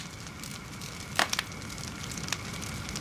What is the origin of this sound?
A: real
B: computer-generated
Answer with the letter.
A